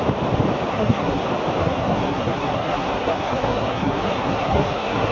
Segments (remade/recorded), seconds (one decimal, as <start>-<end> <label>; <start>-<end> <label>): 0.0-0.7 recorded; 0.7-1.2 remade; 1.2-1.6 recorded; 1.6-5.1 remade